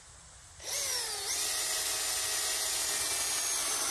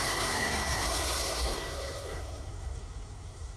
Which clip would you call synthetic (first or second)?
second